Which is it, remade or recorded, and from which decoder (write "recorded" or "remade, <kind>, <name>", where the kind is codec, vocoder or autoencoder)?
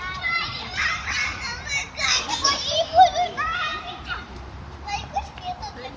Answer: remade, vocoder, BigVGAN v2